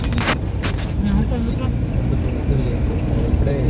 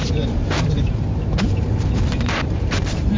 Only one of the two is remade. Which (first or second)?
second